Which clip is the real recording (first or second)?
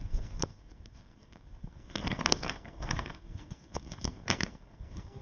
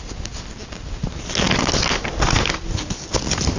second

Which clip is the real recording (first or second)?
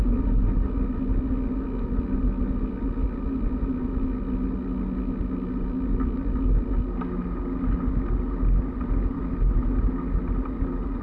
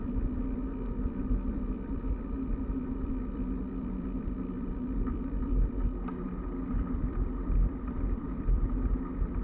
first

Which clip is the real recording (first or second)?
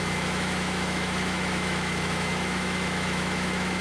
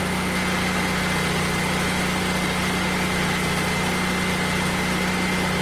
second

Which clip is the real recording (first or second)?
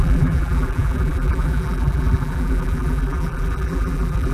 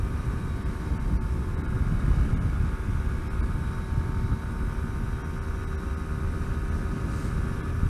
second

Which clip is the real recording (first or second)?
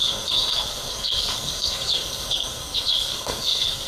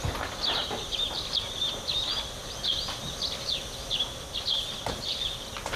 second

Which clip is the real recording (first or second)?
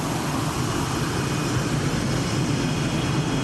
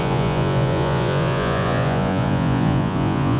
first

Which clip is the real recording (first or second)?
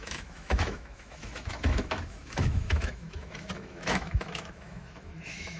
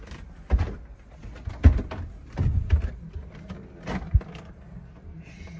second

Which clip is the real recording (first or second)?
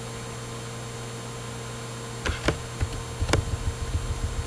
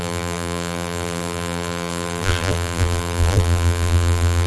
first